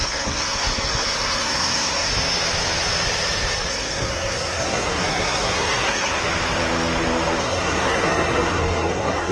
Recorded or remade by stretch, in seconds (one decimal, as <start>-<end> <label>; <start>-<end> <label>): 0.0-2.1 remade; 2.1-3.7 recorded; 3.7-6.2 remade; 6.2-7.4 recorded; 7.4-9.3 remade